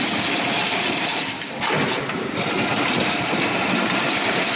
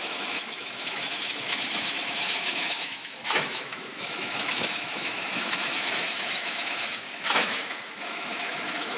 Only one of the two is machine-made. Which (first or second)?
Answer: second